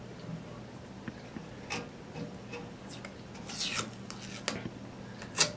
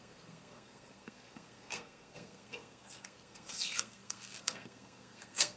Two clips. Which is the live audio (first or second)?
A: first